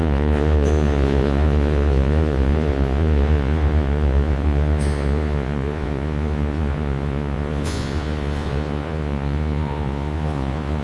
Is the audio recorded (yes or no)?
no